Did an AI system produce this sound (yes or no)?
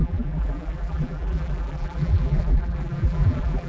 yes